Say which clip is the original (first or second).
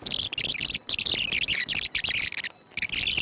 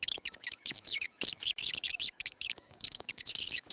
first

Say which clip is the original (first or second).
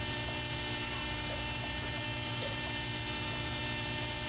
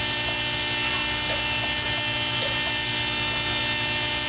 second